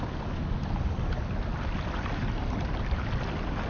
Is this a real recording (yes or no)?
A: yes